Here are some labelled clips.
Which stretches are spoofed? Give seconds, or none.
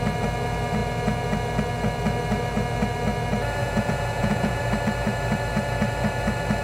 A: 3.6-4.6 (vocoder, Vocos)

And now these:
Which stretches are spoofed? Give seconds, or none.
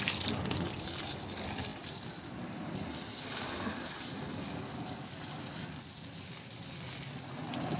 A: none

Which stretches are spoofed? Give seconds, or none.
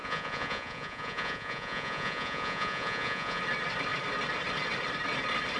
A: 0.0-3.4 (vocoder, Vocos)